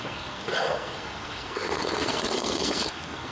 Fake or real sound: fake